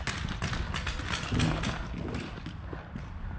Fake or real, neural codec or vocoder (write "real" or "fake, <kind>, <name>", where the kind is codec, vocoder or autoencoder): real